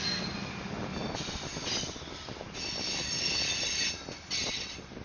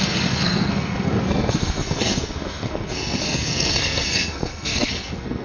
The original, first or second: first